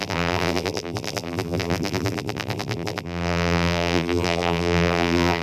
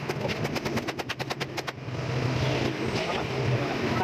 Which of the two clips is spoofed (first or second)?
first